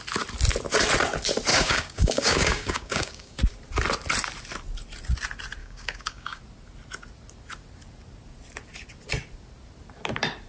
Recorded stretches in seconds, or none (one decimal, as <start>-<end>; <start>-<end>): 0.0-1.5; 3.4-5.6; 6.4-10.5